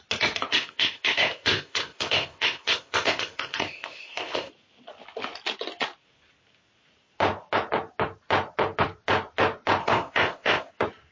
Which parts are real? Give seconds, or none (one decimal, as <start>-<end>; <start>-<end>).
0.0-0.5; 4.5-9.8; 10.7-11.1

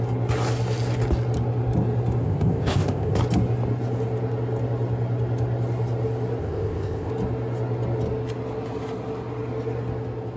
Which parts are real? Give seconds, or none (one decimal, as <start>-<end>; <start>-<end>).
0.0-2.2; 3.2-6.4; 7.1-10.4

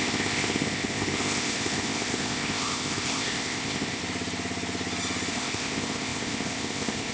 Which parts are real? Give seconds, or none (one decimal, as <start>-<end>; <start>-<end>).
4.0-5.3

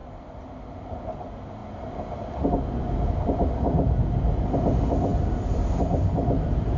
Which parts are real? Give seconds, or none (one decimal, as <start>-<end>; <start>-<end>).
0.0-6.8

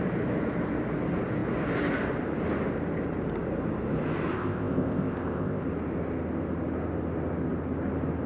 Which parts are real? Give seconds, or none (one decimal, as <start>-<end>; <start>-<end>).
0.0-4.3; 5.6-8.3

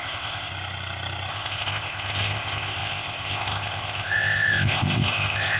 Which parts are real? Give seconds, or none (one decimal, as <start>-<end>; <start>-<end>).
0.5-1.3

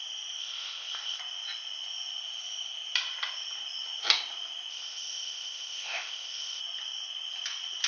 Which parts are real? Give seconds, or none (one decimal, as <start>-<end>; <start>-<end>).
0.0-0.4; 1.2-4.7; 6.6-7.9

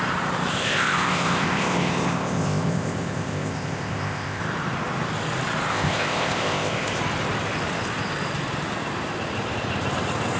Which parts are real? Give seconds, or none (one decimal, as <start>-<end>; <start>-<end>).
0.0-0.5; 4.4-5.7; 7.0-10.4